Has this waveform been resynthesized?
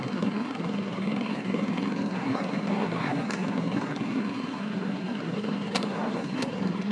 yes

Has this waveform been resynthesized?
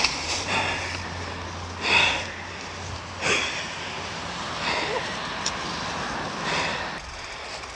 no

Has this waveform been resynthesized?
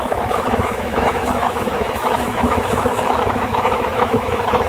yes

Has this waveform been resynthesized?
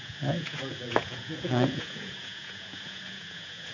yes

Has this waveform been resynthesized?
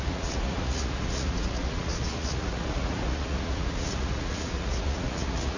yes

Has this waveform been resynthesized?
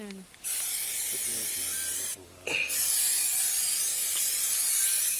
no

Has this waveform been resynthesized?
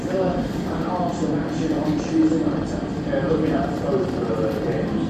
yes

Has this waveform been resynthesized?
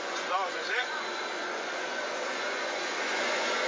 yes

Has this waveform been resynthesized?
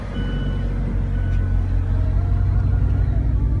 no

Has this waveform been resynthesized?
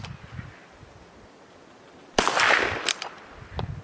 no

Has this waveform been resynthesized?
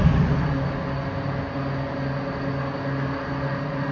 no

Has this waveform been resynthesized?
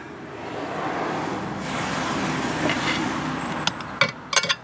no